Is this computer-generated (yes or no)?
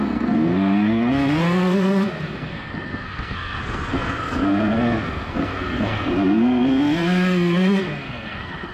yes